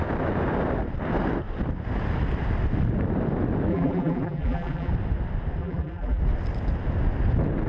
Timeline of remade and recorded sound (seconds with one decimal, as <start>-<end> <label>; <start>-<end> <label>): 0.0-3.7 recorded; 3.7-4.9 remade; 4.9-5.6 recorded; 5.6-6.2 remade; 6.2-7.7 recorded